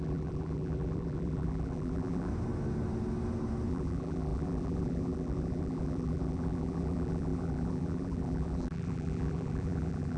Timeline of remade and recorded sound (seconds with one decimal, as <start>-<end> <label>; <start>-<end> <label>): 0.0-2.3 remade; 2.3-3.7 recorded; 3.7-10.2 remade